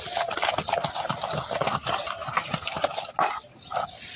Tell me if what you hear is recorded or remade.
recorded